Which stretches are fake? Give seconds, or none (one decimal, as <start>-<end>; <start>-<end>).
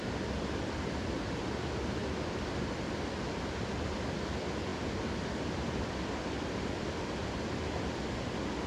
none